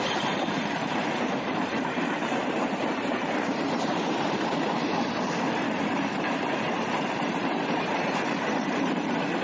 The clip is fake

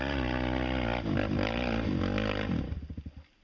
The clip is real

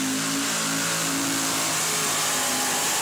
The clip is real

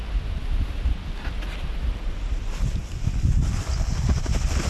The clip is real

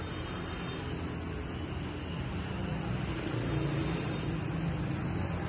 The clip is real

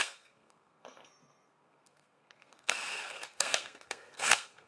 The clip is fake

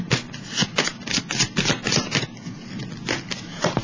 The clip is real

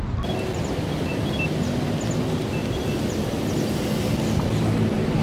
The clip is real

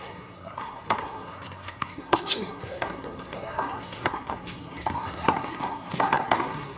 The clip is fake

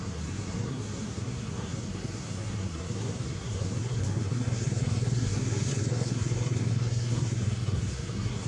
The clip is fake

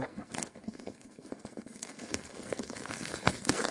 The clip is fake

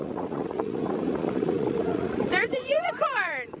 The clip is fake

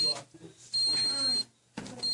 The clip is real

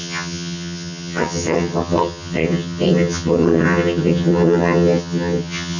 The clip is fake